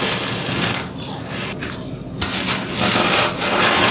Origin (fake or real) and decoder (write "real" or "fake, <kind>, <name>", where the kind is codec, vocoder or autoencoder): real